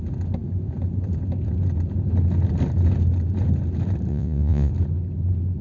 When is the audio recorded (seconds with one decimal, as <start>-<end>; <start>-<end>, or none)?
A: 0.0-4.1; 4.7-5.6